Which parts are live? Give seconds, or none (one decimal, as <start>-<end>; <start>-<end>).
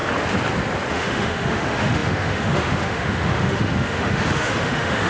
0.0-0.9